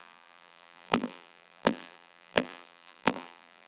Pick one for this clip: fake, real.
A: fake